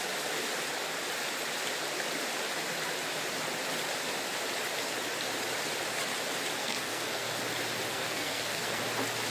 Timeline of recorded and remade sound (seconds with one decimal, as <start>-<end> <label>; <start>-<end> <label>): 0.0-6.6 recorded; 6.6-7.4 remade; 7.4-7.9 recorded; 7.9-8.8 remade; 8.8-9.3 recorded